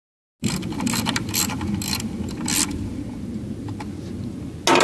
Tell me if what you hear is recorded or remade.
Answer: recorded